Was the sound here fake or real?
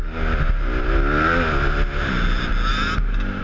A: real